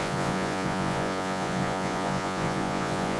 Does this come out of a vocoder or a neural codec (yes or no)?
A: yes